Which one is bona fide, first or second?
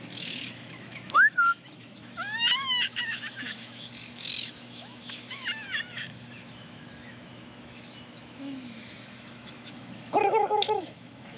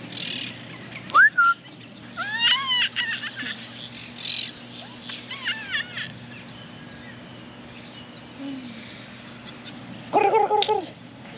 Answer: second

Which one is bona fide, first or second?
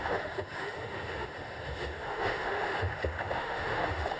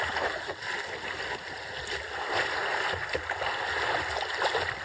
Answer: second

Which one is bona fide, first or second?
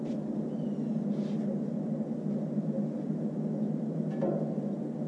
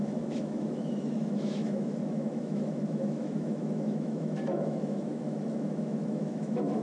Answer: first